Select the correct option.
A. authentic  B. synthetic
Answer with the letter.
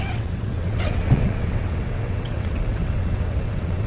B